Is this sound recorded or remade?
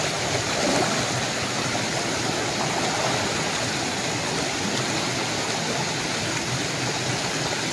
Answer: recorded